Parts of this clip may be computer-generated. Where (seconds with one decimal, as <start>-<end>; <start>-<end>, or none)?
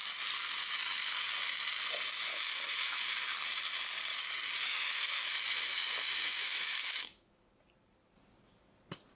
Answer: 2.3-3.0; 4.7-7.5